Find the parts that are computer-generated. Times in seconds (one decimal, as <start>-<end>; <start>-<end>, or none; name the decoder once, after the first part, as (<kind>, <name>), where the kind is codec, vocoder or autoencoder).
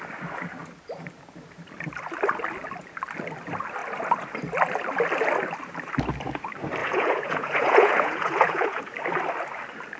6.8-8.8 (vocoder, Vocos)